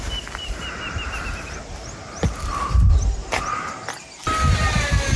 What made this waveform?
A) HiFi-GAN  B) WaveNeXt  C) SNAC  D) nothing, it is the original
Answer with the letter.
D